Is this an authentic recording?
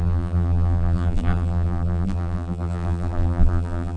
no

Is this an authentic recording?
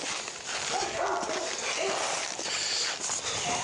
yes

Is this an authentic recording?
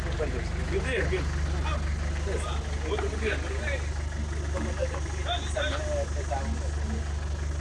yes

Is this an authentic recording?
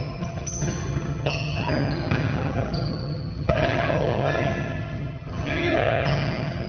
no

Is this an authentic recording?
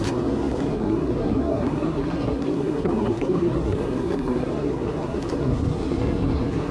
no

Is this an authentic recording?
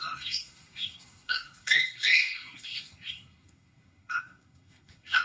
no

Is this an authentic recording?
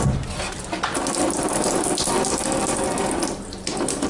yes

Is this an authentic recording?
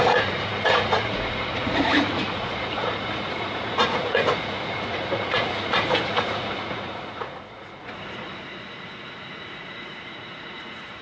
no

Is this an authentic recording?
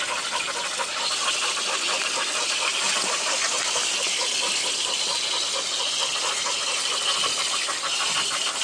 yes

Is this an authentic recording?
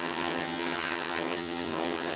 no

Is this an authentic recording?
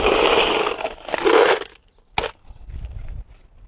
yes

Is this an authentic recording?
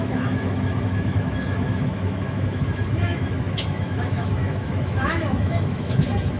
no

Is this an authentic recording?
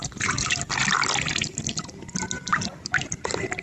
yes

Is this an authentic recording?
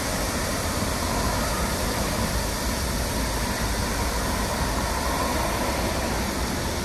yes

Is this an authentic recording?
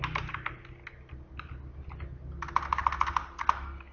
yes